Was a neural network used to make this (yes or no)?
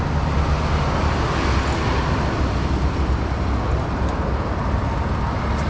no